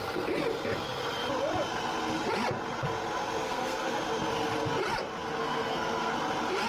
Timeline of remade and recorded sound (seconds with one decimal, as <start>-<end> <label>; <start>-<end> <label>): 0.0-3.4 recorded; 3.4-4.0 remade; 4.0-5.4 recorded; 5.4-6.1 remade; 6.1-6.7 recorded

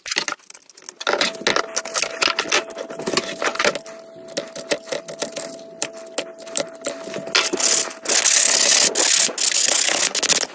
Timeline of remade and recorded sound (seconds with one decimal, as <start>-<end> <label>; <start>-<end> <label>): 0.0-10.5 recorded

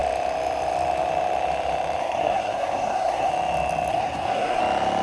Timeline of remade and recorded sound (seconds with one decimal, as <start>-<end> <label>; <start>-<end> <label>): 0.0-2.0 recorded; 2.0-3.3 remade; 3.3-3.9 recorded; 3.9-4.6 remade; 4.6-5.0 recorded

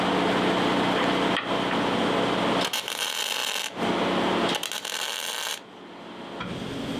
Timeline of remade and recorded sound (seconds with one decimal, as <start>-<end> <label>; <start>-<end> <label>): 0.0-7.0 recorded

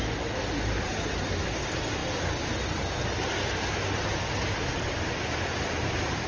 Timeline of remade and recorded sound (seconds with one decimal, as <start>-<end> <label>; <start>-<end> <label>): 0.0-6.3 recorded

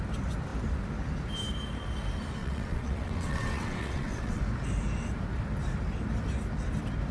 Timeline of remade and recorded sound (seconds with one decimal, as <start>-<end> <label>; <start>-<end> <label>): 0.0-2.4 recorded; 2.4-4.4 remade; 4.4-7.1 recorded

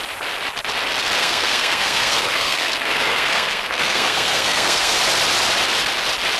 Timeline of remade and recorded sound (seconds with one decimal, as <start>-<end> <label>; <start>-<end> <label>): 0.0-1.2 recorded; 1.2-5.0 remade; 5.0-6.4 recorded

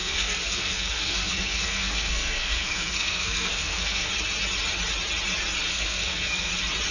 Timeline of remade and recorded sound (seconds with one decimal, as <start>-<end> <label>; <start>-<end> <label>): 0.0-4.1 remade; 4.1-5.7 recorded; 5.7-6.5 remade; 6.5-6.9 recorded